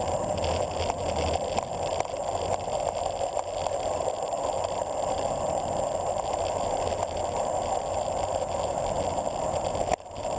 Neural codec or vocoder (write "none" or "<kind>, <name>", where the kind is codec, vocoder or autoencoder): none